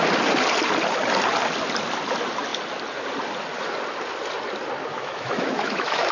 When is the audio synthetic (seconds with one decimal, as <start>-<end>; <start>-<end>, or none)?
4.9-6.1